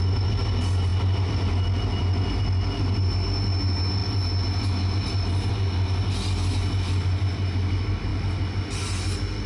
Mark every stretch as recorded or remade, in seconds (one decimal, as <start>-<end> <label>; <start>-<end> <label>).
0.0-9.5 recorded